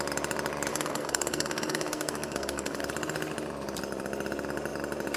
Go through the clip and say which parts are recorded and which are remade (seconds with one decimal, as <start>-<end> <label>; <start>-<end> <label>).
0.0-0.7 recorded; 0.7-2.8 remade; 2.8-5.2 recorded